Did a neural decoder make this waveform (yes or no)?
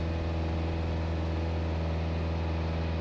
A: no